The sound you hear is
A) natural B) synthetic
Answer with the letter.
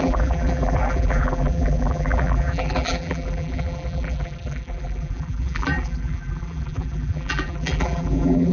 B